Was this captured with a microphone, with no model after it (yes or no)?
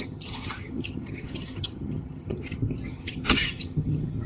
no